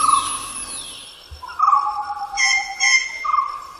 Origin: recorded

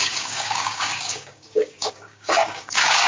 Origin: remade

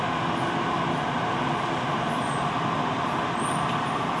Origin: recorded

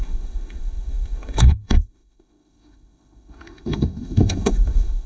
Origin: remade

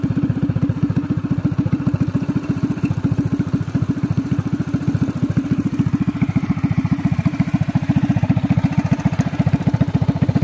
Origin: remade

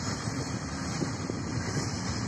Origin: recorded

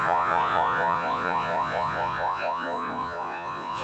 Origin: remade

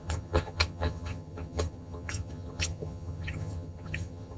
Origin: remade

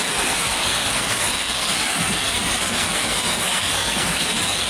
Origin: remade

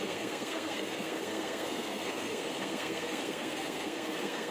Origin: remade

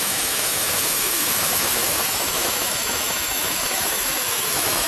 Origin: remade